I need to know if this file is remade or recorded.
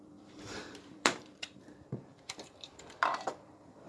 remade